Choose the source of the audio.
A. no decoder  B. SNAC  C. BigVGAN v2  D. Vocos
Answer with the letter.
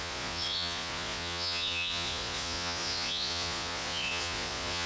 D